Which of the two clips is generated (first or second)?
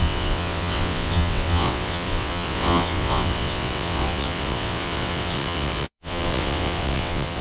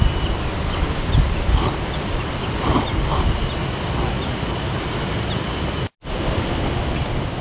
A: first